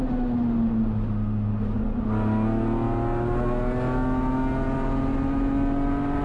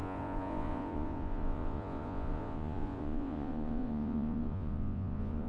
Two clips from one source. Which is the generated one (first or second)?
second